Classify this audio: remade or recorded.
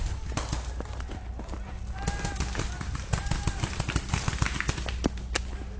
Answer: recorded